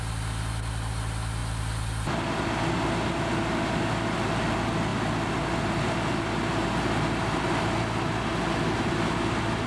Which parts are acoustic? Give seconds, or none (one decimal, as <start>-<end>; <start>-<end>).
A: 0.0-1.4; 2.4-9.7

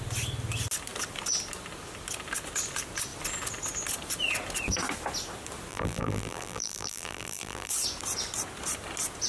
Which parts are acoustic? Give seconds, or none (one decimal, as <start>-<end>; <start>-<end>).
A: 0.0-5.7; 7.7-9.3

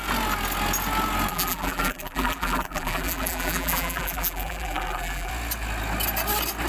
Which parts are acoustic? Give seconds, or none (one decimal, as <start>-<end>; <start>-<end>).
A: 0.0-1.3; 5.3-6.7

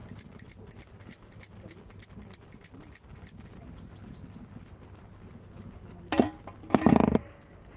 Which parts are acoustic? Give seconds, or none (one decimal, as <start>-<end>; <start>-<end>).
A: 0.0-7.8